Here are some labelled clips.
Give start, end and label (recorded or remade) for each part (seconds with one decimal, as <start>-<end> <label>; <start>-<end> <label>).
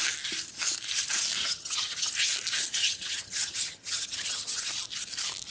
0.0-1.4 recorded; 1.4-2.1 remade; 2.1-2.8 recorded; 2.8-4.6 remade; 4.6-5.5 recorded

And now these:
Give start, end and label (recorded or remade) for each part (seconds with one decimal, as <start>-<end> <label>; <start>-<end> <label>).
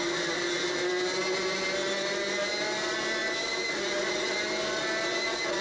0.0-5.6 recorded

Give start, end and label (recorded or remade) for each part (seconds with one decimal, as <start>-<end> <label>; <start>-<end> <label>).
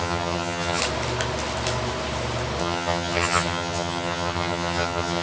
0.0-0.8 remade; 0.8-2.6 recorded; 2.6-5.2 remade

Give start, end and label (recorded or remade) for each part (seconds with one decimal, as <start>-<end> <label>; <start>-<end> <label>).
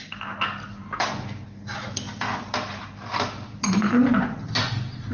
0.0-5.1 recorded